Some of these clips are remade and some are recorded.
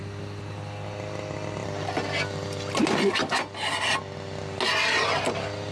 recorded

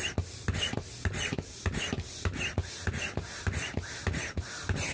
recorded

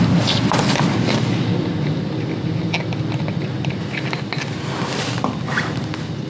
recorded